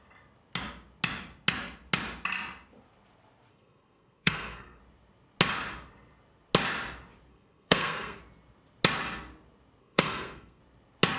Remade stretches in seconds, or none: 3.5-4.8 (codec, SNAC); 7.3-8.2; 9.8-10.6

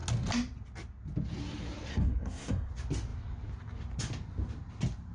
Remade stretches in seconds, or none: 1.9-2.7 (codec, SNAC)

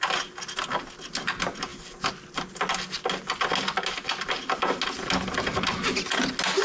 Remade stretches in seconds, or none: none

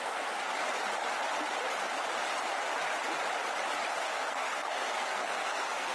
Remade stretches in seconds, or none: 0.0-0.5 (codec, SNAC); 4.0-5.9

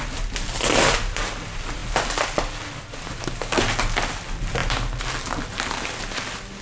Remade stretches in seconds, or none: none

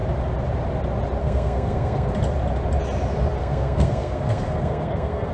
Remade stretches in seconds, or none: 1.2-2.1 (codec, SNAC); 3.4-5.3